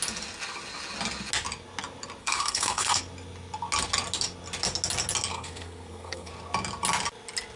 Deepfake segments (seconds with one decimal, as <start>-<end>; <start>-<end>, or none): 2.2-3.0; 5.3-6.3